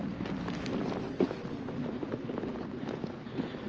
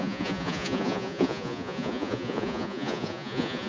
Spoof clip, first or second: second